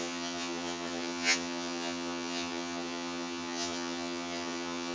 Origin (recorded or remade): remade